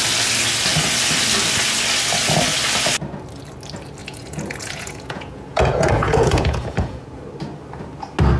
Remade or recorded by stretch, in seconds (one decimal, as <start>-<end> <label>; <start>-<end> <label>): 0.0-4.0 recorded; 4.0-7.2 remade; 7.2-8.4 recorded